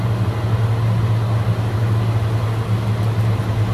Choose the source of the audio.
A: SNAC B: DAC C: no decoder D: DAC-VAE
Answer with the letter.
C